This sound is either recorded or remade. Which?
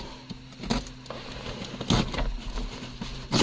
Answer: recorded